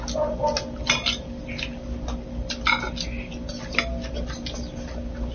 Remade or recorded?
recorded